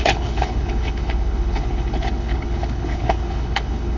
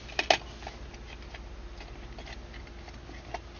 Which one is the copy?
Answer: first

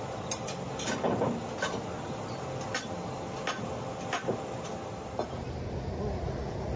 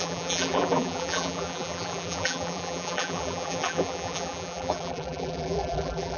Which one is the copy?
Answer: second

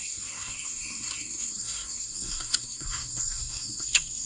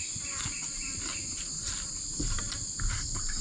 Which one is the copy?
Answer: first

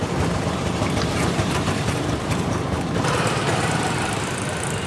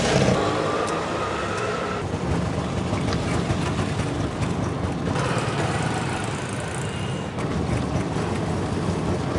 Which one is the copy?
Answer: first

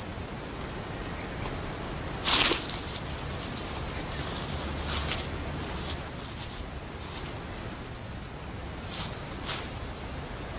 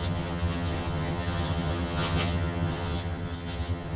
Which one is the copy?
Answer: second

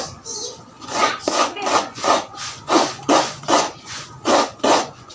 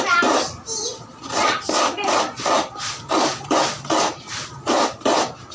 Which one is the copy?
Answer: first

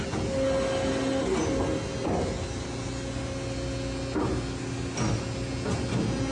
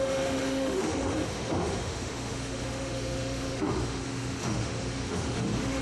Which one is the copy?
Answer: second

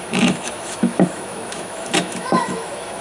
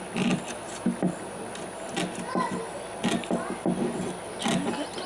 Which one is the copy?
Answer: first